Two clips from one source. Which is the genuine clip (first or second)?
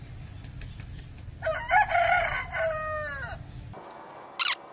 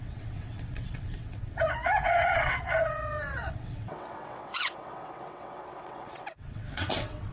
first